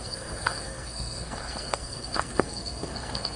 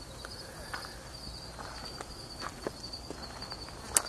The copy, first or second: first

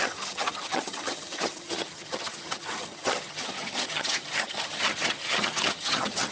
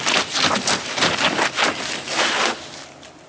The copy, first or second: first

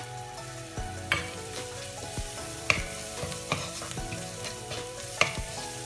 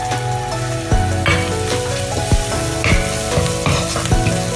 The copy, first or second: first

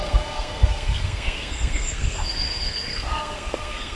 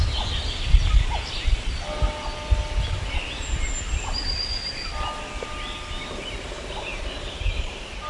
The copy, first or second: first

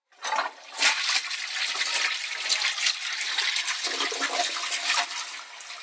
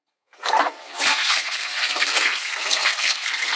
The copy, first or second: second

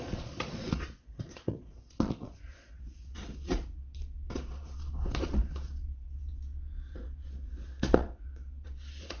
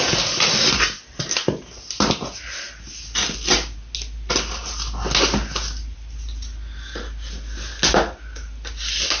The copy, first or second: first